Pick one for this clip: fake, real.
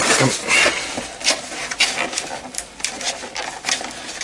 real